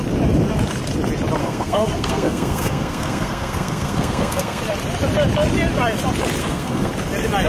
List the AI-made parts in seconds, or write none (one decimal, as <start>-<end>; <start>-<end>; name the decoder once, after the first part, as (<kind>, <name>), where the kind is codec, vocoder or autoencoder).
1.4-4.6 (codec, SNAC); 6.4-6.9